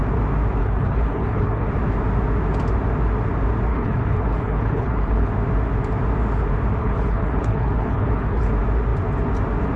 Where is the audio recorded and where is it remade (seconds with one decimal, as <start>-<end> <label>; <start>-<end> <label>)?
0.0-0.6 recorded; 0.6-1.7 remade; 1.7-3.7 recorded; 3.7-5.3 remade; 5.3-6.8 recorded; 6.8-8.5 remade; 8.5-9.8 recorded